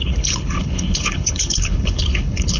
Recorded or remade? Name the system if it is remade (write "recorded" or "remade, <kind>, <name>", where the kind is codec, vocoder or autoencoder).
remade, codec, HILCodec